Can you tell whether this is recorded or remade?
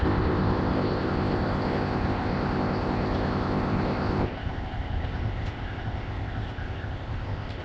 remade